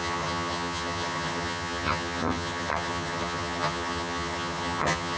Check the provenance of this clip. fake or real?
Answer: fake